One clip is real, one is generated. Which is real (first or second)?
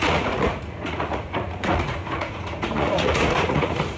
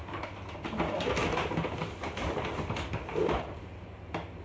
second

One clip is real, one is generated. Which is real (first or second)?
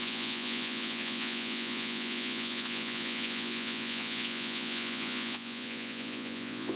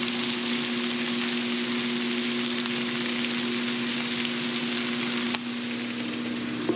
second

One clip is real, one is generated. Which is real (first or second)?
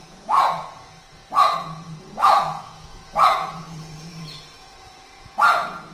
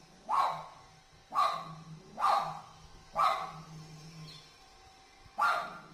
second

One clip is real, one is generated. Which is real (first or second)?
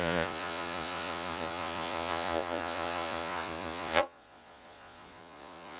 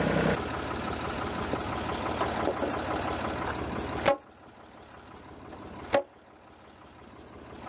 second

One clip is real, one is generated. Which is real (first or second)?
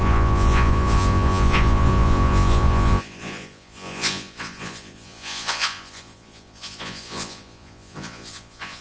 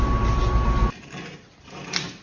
second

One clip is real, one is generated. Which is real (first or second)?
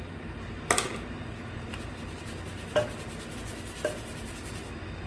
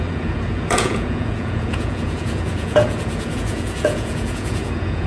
first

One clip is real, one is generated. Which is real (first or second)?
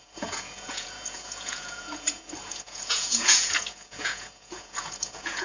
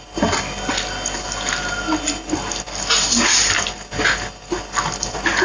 second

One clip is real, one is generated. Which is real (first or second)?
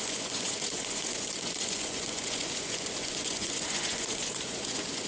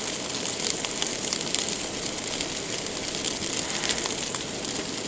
second